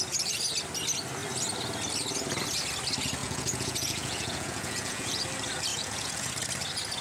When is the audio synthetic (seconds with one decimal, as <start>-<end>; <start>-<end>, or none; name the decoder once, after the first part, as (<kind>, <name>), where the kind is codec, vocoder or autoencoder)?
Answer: 3.2-5.2 (vocoder, Vocos); 5.7-6.3